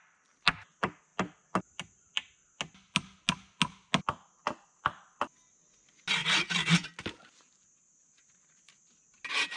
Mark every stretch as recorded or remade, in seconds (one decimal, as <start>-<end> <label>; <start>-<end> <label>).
0.0-6.2 recorded; 6.2-7.6 remade; 7.6-9.6 recorded